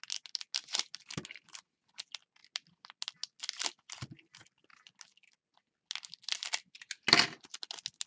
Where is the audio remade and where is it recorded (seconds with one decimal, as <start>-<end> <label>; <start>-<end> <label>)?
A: 0.0-8.1 recorded